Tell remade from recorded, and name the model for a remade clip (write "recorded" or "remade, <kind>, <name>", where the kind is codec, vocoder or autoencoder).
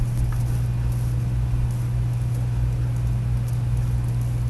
recorded